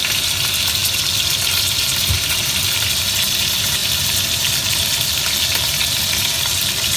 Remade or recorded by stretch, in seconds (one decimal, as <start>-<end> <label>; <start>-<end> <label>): 0.0-7.0 recorded